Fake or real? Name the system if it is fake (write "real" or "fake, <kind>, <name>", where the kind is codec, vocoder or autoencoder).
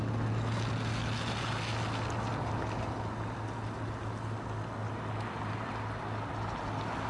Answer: real